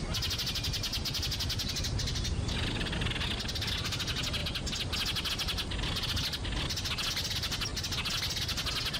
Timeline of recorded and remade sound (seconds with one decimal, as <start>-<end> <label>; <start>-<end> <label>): 0.0-9.0 recorded